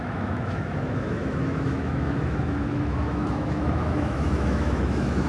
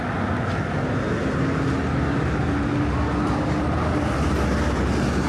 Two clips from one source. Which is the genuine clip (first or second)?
second